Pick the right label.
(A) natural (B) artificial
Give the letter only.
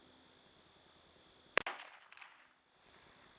A